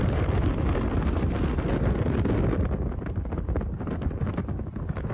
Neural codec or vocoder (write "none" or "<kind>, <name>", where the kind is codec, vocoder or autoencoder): none